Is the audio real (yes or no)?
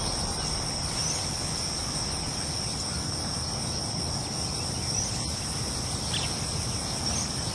yes